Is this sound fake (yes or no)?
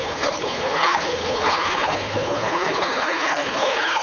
yes